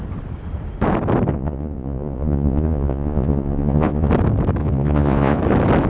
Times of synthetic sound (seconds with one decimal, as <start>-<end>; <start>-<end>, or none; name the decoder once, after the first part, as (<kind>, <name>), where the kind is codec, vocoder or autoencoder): 1.3-4.1 (vocoder, Vocos); 4.6-5.4